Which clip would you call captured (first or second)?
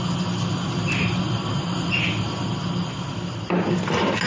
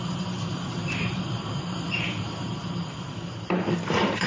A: first